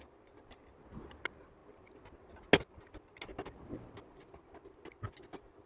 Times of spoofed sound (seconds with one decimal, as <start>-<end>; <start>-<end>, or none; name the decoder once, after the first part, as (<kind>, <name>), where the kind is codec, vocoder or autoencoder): none